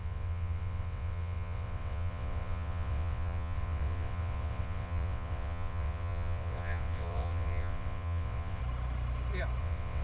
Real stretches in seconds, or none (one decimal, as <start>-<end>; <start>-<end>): 8.6-9.6